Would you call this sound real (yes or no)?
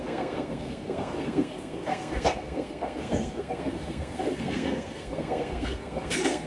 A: no